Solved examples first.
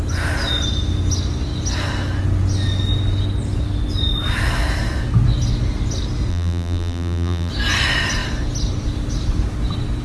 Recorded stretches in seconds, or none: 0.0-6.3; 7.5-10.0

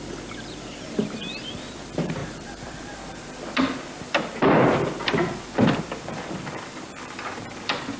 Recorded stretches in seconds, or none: none

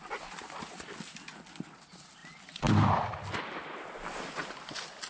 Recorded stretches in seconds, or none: 0.0-5.1

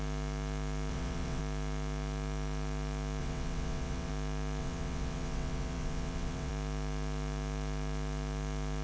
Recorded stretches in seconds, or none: 0.0-0.9; 1.4-3.2; 4.1-4.6; 6.5-8.8